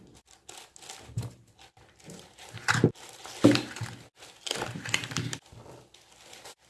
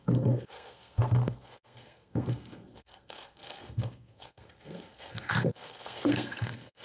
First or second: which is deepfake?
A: second